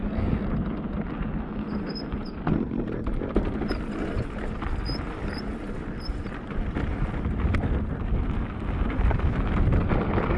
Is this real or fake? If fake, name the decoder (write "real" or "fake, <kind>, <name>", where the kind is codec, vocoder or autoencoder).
real